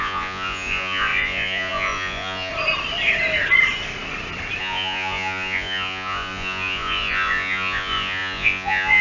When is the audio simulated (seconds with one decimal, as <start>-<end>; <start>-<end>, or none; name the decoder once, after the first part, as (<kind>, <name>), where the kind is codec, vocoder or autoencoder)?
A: 0.0-2.5 (vocoder, Vocos); 4.6-9.0

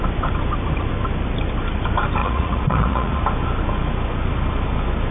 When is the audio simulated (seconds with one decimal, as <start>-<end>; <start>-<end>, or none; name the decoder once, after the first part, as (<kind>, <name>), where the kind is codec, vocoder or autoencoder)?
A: 2.2-3.2 (vocoder, Vocos)

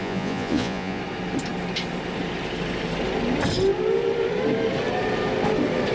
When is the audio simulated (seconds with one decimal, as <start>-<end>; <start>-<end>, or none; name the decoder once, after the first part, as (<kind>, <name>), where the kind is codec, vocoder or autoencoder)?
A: 0.0-1.0 (vocoder, Vocos)

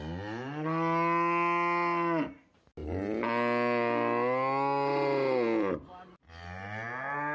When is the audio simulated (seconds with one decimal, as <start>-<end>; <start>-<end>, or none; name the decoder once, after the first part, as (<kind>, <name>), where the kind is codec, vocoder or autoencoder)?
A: none

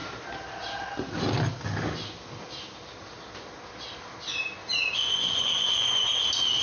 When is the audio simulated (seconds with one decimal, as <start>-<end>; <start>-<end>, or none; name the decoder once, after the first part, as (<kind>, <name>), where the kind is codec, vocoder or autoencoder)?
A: 5.0-6.1 (vocoder, Vocos)

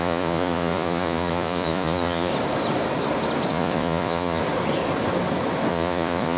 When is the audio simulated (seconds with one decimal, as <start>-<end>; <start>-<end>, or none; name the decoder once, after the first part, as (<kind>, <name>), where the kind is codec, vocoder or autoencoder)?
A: 0.0-2.3 (vocoder, Vocos); 3.5-4.4; 5.7-6.4

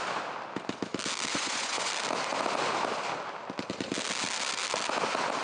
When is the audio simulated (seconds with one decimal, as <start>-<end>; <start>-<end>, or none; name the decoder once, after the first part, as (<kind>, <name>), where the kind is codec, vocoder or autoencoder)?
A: 1.3-1.9 (vocoder, Vocos)